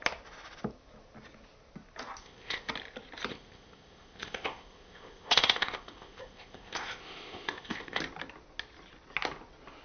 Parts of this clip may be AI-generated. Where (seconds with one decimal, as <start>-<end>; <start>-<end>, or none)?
2.2-2.7; 3.3-8.0